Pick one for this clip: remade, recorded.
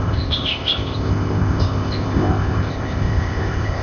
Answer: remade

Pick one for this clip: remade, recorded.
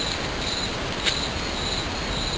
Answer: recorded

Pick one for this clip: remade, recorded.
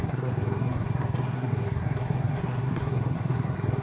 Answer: remade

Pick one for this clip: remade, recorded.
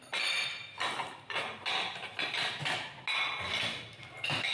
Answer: recorded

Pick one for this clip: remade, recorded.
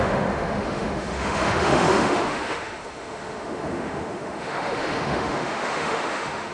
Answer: remade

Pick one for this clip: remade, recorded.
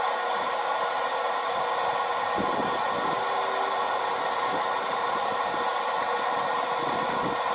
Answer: recorded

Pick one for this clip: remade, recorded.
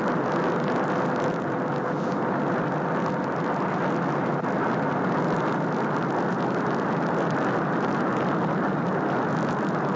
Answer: recorded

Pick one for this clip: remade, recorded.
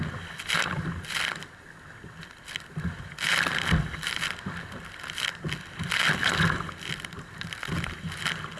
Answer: recorded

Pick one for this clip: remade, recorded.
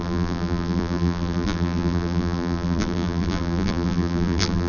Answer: remade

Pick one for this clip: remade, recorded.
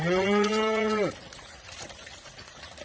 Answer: remade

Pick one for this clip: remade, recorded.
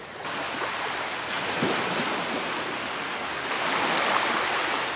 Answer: recorded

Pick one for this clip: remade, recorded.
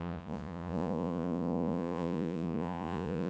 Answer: remade